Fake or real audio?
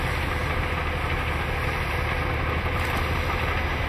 real